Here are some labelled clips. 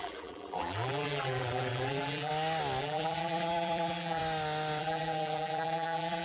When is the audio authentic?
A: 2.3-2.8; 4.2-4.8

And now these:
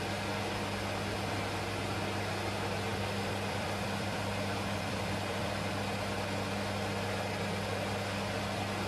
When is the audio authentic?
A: 0.0-2.9; 5.5-8.9

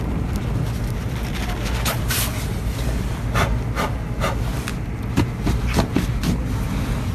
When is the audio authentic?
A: 0.0-7.1

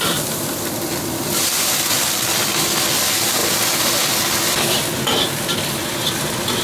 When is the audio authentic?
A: 0.0-6.6

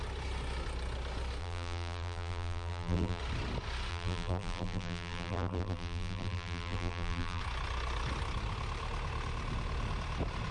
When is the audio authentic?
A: 0.0-1.4; 3.2-3.9; 7.4-10.5

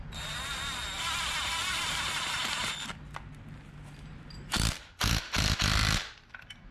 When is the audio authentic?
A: 0.0-6.7